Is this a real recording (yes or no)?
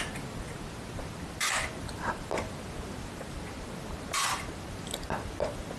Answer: yes